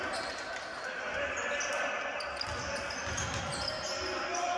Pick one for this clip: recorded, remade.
recorded